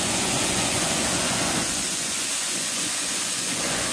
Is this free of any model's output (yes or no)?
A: no